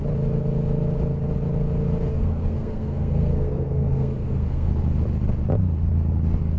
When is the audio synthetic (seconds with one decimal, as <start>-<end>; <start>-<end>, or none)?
2.1-4.7